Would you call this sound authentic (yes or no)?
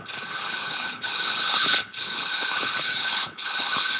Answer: no